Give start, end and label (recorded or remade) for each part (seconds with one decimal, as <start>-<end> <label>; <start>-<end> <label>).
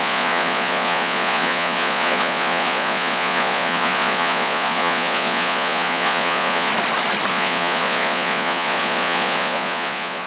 0.0-6.7 remade; 6.7-7.3 recorded; 7.3-10.3 remade